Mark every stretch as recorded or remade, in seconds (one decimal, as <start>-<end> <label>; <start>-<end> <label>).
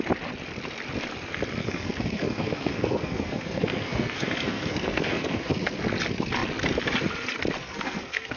0.0-1.6 recorded; 1.6-5.8 remade; 5.8-7.6 recorded; 7.6-8.4 remade